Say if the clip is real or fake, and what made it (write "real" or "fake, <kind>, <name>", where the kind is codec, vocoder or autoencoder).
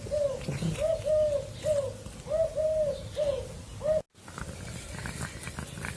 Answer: real